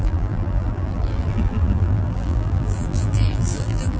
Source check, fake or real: fake